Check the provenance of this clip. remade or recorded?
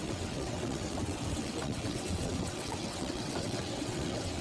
remade